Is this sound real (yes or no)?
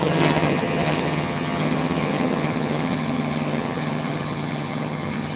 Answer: no